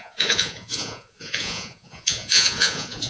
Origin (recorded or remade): remade